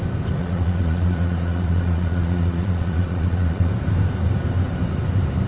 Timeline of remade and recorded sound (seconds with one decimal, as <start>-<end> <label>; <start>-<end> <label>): 0.0-0.4 recorded; 0.4-3.7 remade; 3.7-5.5 recorded